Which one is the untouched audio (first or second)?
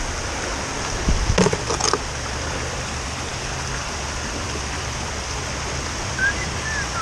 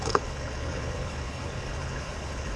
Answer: first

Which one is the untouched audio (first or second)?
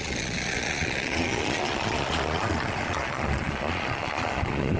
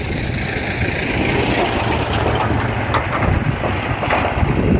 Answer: second